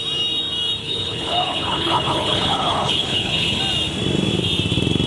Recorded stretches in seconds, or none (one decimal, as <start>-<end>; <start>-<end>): 0.0-0.8; 3.6-5.1

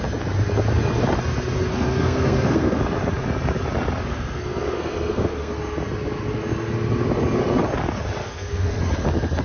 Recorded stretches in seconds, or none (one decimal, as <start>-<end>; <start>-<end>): 0.0-1.7; 2.8-4.1; 5.5-8.2; 8.8-9.4

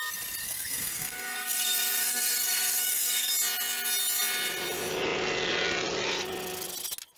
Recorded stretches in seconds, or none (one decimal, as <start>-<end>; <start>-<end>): 0.0-0.4; 3.3-7.2

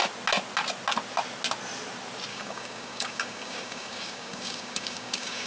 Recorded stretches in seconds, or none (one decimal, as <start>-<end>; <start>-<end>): 0.0-2.3

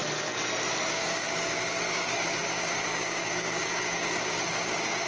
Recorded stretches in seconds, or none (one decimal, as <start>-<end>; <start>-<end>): 0.0-0.9

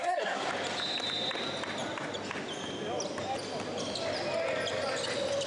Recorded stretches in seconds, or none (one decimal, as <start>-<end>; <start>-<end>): 0.5-5.5

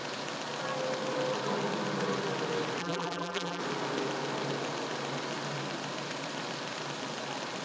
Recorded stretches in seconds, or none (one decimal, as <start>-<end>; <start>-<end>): 0.0-2.8; 3.6-7.6

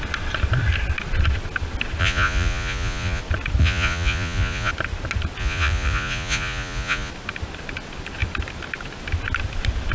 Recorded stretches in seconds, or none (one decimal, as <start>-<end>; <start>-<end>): 0.0-2.0; 3.2-3.6; 4.7-5.4; 7.1-9.9